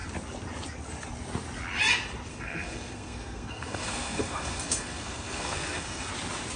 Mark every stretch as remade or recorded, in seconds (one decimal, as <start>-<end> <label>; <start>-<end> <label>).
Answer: 0.0-2.3 recorded; 2.3-6.1 remade; 6.1-6.6 recorded